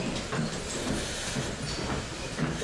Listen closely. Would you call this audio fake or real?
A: real